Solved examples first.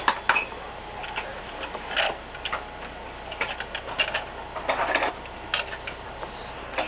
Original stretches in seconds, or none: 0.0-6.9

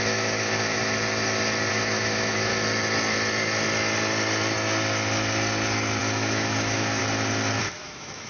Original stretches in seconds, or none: 0.8-1.7; 2.5-6.0; 7.0-7.6

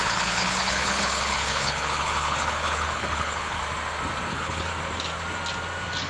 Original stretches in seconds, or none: 3.6-4.3; 4.7-6.1

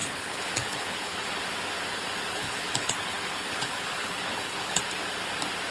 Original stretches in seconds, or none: 1.4-2.3; 4.8-5.7

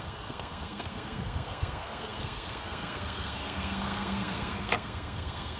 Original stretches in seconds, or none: none

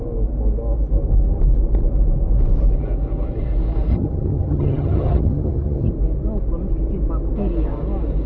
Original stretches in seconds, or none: 0.0-3.9; 5.9-8.3

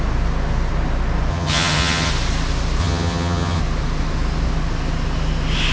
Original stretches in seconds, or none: 0.0-1.3; 2.1-2.8; 3.6-5.7

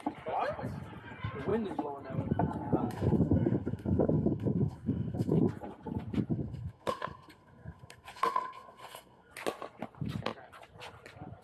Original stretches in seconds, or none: 0.0-2.8; 5.5-6.3; 9.3-11.4